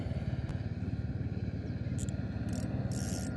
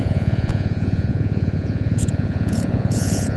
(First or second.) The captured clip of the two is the first